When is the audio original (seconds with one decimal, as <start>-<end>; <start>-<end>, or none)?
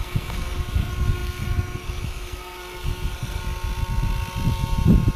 3.4-5.2